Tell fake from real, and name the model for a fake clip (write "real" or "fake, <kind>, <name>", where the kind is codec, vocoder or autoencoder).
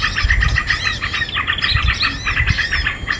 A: real